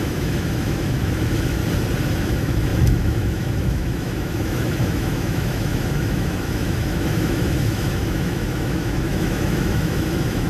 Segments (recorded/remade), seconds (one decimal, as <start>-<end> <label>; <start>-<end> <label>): 0.0-1.6 remade; 1.6-2.2 recorded; 2.2-10.5 remade